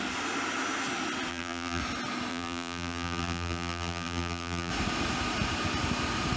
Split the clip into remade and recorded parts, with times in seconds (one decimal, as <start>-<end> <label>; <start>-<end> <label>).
0.0-1.3 recorded; 1.3-1.8 remade; 1.8-2.3 recorded; 2.3-4.7 remade; 4.7-6.4 recorded